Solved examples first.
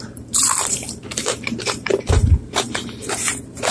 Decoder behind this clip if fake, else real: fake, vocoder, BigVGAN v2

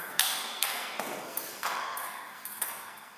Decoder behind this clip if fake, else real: fake, codec, SNAC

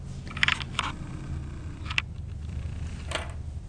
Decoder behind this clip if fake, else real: real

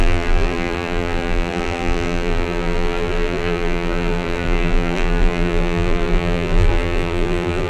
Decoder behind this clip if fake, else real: fake, vocoder, BigVGAN v2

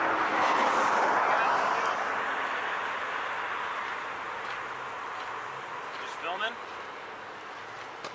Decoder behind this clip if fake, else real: real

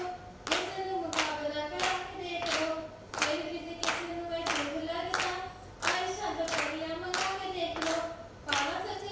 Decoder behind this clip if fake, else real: real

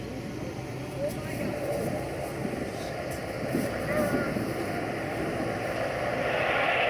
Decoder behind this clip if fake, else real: fake, vocoder, BigVGAN v2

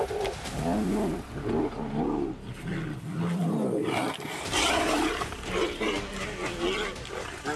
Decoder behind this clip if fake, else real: real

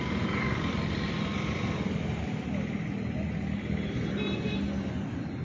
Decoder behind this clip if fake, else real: real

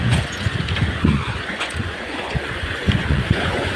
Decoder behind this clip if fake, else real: fake, vocoder, Vocos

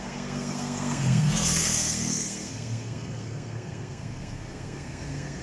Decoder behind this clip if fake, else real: fake, codec, SNAC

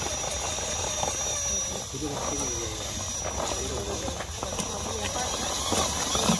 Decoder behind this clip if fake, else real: real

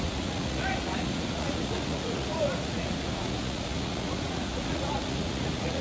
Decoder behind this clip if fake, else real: fake, vocoder, Vocos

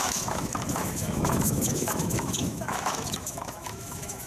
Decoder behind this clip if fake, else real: fake, autoencoder, DAC-VAE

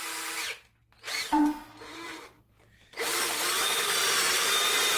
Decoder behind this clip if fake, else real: real